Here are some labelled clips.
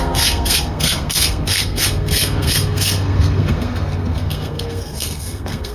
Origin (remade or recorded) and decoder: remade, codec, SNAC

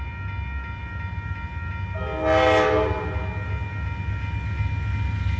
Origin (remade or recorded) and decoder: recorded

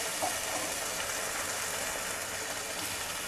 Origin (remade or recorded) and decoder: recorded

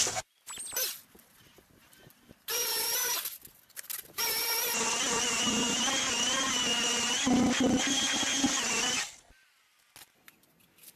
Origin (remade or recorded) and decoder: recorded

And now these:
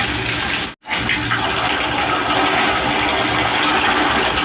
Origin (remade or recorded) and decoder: recorded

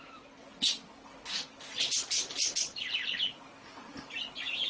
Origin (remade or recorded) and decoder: recorded